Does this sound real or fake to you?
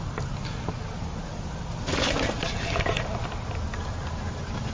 real